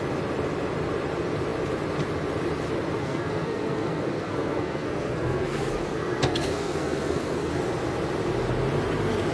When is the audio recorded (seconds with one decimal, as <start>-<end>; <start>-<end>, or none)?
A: 0.0-3.0; 7.5-9.3